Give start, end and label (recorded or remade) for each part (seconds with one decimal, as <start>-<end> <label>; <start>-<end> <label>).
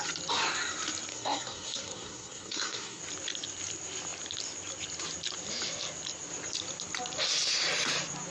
0.0-1.1 recorded; 1.1-3.0 remade; 3.0-8.3 recorded